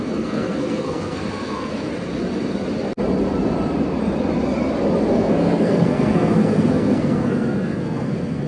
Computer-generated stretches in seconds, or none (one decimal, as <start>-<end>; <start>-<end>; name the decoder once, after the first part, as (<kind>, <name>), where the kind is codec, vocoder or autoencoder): 0.0-1.9 (codec, SNAC); 5.1-8.5